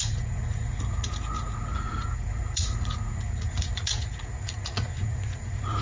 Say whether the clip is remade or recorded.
remade